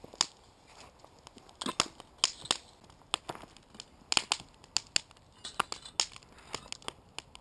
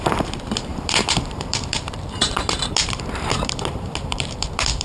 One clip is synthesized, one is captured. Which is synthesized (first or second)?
second